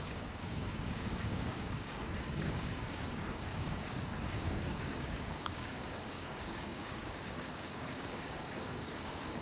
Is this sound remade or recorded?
remade